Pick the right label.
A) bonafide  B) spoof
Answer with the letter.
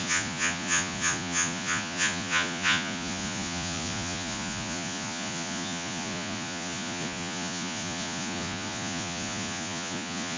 B